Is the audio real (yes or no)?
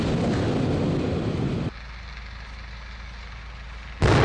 yes